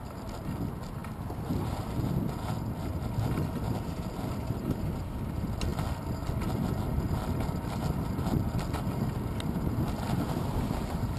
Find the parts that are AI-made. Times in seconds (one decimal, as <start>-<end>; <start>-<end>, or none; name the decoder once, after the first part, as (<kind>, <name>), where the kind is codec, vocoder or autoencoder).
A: none